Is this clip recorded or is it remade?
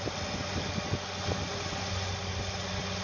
recorded